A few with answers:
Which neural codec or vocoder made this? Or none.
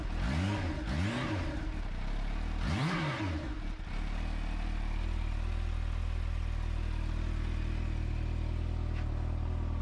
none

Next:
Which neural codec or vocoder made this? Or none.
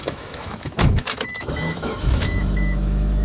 autoencoder, DAC-VAE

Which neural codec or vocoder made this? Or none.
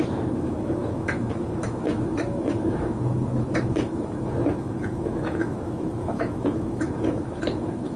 autoencoder, DAC-VAE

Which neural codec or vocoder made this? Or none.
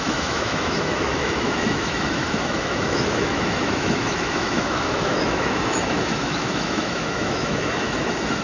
autoencoder, DAC-VAE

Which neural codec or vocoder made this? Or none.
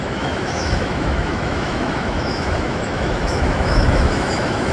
autoencoder, DAC-VAE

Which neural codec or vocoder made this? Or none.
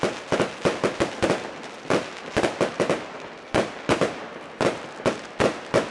none